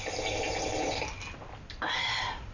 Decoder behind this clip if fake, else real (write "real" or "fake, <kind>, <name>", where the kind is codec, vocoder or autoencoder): real